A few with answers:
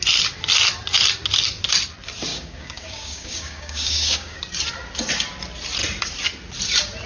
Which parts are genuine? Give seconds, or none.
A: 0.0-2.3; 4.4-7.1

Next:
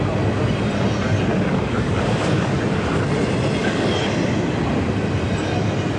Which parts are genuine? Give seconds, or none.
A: 0.0-1.3; 2.6-3.6; 4.1-6.0

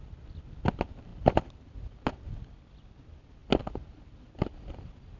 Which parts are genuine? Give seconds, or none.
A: 0.0-5.2

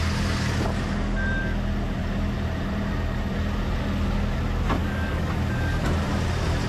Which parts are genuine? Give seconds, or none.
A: 0.0-4.8; 5.3-6.7

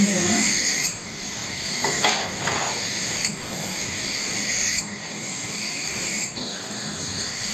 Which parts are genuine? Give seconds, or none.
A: none

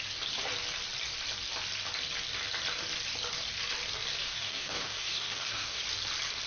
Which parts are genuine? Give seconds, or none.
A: 0.0-4.2; 5.8-6.5

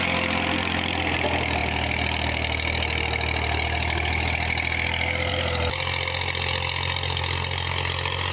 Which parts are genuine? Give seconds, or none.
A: 0.0-8.3